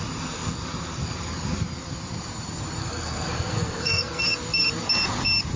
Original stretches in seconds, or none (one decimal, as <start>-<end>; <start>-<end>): 0.0-2.8; 4.2-5.6